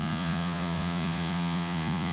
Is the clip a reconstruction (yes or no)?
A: yes